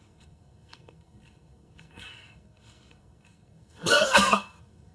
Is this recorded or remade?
remade